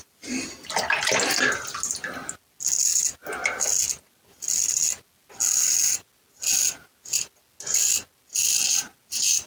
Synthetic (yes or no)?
no